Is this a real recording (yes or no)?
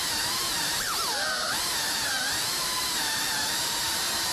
no